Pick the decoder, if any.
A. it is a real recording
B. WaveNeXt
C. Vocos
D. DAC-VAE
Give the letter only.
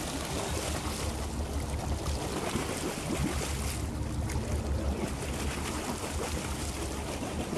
A